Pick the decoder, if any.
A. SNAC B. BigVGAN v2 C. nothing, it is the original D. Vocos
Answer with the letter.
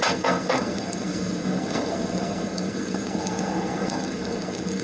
A